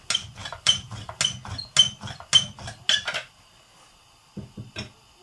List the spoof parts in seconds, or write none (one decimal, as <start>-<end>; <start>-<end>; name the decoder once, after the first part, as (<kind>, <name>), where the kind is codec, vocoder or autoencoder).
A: 0.4-1.1 (vocoder, BigVGAN v2)